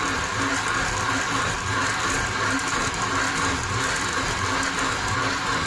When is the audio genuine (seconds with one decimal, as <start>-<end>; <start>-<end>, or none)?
0.0-5.7